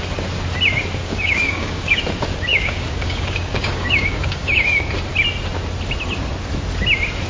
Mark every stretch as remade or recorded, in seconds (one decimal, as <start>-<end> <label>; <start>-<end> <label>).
0.0-1.0 recorded; 1.0-2.0 remade; 2.0-2.5 recorded; 2.5-4.9 remade; 4.9-7.3 recorded